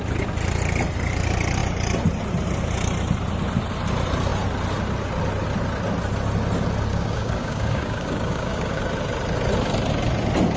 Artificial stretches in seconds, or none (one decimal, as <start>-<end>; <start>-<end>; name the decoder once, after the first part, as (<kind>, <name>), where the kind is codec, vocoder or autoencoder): 6.9-8.8 (codec, DAC)